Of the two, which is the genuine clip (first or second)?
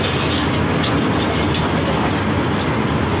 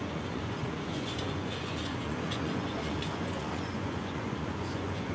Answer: first